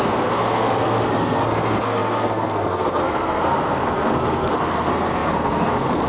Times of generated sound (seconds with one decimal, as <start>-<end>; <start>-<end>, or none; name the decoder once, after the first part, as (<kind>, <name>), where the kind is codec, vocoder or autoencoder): 0.0-6.1 (codec, SNAC)